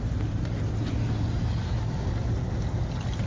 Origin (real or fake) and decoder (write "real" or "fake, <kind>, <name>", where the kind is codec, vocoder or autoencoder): real